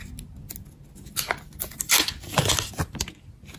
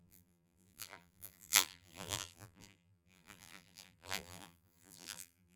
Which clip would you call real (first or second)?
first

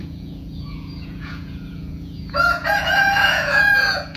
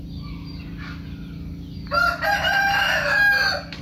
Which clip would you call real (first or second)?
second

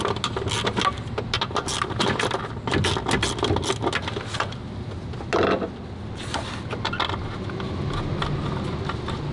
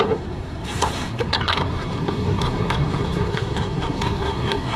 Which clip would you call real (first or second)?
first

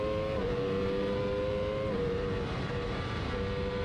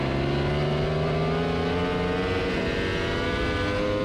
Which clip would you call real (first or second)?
second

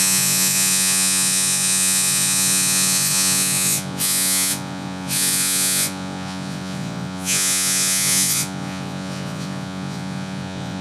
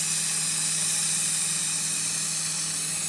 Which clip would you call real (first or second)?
second